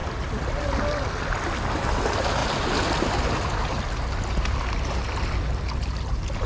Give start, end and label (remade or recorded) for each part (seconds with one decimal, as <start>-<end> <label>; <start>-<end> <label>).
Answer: 0.0-6.5 recorded

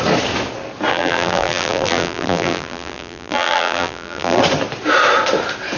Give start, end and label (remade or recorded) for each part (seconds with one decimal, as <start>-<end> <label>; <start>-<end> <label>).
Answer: 0.0-0.9 recorded; 0.9-4.4 remade; 4.4-5.8 recorded

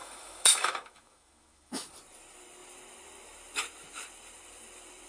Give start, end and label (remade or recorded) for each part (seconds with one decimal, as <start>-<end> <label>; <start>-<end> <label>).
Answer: 0.0-1.9 remade; 1.9-5.1 recorded

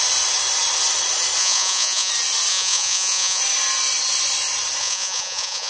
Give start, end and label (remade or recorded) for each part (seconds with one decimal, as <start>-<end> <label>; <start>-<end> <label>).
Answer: 0.0-1.4 recorded; 1.4-2.1 remade; 2.1-2.5 recorded; 2.5-3.4 remade; 3.4-4.8 recorded; 4.8-5.7 remade